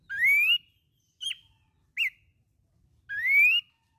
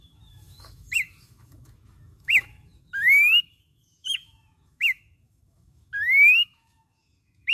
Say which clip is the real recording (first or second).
first